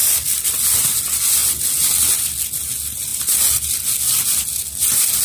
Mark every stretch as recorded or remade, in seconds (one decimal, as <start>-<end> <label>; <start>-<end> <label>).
0.0-5.2 recorded